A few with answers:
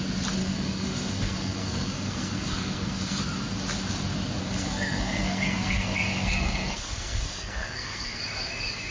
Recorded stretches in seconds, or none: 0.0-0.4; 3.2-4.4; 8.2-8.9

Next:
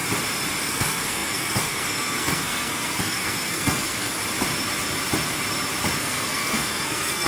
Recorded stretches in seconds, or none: 0.0-0.6; 4.2-6.0

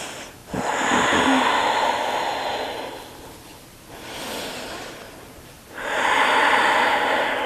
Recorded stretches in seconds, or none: 0.0-7.5

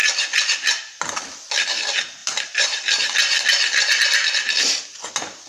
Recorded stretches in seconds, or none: 0.0-2.2; 2.8-5.5

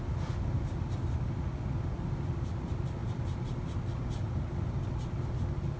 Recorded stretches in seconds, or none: 0.0-5.8

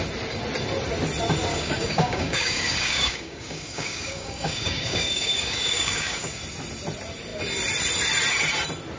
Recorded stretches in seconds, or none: 0.0-1.5; 6.4-9.0

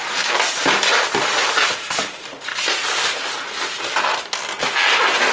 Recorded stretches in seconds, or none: 0.0-5.3